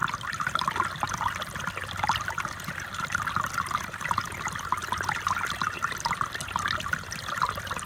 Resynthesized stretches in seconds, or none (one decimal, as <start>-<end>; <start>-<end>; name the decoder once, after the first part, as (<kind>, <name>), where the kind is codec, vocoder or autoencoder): none